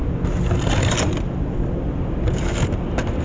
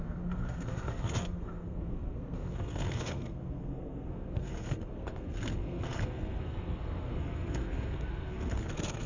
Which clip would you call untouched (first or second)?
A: first